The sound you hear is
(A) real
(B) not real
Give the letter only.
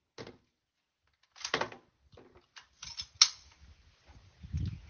A